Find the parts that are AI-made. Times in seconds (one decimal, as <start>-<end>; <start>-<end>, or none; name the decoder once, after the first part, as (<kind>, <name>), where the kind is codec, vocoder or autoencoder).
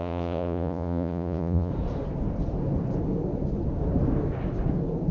0.0-1.7 (vocoder, Vocos)